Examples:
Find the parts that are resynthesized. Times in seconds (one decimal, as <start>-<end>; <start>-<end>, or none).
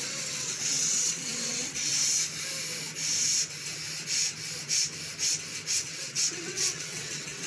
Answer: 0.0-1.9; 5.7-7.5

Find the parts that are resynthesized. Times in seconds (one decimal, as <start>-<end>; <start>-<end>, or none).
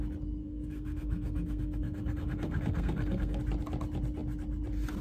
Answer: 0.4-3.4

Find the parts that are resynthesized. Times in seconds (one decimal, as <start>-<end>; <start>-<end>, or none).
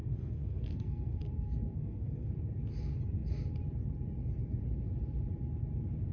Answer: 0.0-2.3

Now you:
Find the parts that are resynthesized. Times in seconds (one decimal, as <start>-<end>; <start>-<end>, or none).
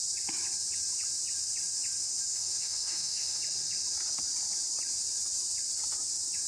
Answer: 2.3-3.4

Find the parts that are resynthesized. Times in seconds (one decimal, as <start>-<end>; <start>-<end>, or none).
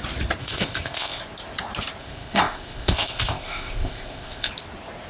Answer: 0.4-1.2; 2.0-4.5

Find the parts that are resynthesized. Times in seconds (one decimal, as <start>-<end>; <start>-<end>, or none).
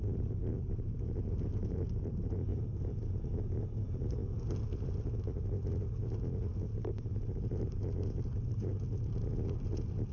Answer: 0.0-4.2; 6.5-8.7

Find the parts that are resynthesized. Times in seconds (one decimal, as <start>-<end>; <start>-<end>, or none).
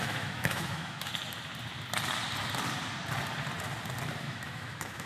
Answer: 0.0-1.1; 4.2-5.1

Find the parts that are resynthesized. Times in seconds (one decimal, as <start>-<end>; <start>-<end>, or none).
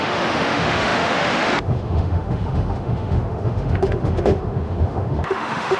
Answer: 0.0-5.8